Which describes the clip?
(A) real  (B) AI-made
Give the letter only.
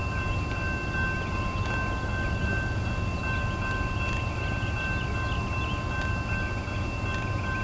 A